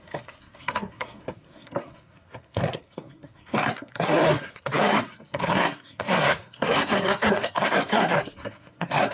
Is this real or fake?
fake